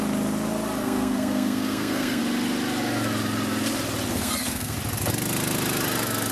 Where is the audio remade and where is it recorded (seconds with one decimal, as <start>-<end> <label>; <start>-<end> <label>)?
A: 0.0-0.8 recorded; 0.8-2.2 remade; 2.2-4.1 recorded; 4.1-4.8 remade; 4.8-6.3 recorded